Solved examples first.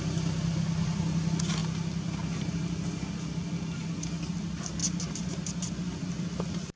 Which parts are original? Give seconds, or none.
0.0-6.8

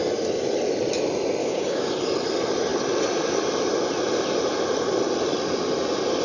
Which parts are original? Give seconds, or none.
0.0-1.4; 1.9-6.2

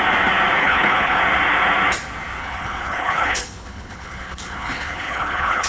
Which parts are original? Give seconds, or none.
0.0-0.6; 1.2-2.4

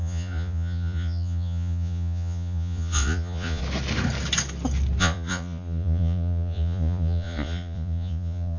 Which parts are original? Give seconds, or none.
3.6-5.0